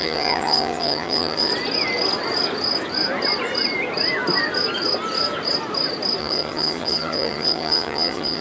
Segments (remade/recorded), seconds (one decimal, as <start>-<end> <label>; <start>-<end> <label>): 0.0-1.5 remade; 1.5-6.2 recorded; 6.2-8.4 remade